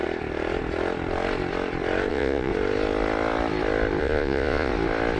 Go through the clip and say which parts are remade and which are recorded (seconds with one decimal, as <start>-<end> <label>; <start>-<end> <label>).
0.0-2.1 recorded; 2.1-2.5 remade; 2.5-4.0 recorded; 4.0-4.7 remade; 4.7-5.2 recorded